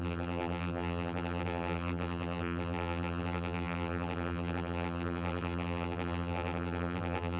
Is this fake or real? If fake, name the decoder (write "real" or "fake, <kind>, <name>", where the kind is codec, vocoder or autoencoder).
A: fake, vocoder, BigVGAN v2